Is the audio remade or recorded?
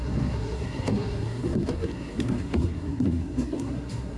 remade